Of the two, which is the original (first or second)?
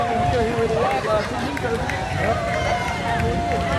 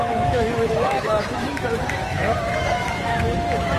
first